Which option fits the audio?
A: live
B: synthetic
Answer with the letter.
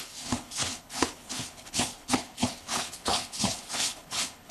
B